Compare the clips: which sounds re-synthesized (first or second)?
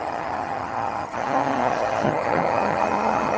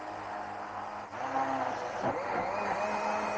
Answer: first